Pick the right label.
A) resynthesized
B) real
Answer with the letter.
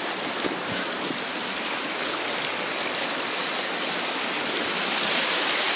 B